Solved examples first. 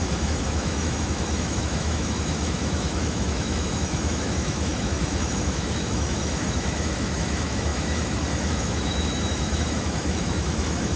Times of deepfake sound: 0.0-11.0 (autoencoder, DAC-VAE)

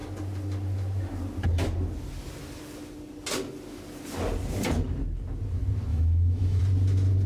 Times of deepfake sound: 5.9-6.6 (autoencoder, DAC-VAE)

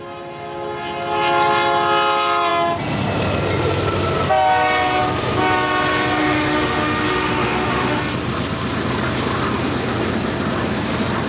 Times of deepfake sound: 6.2-8.0 (autoencoder, DAC-VAE)

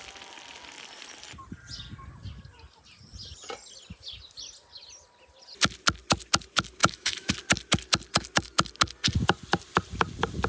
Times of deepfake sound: 6.8-7.3 (autoencoder, DAC-VAE)